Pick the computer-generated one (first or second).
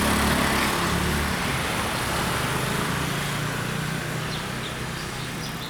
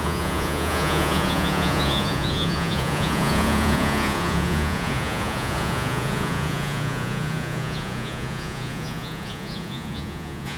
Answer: second